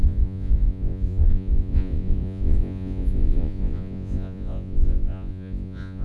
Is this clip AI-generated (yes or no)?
yes